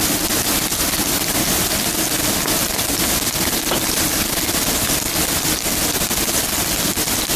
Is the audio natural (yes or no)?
yes